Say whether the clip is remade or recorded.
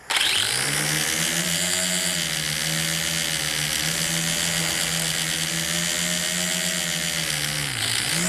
recorded